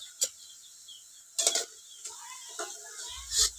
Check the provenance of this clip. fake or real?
real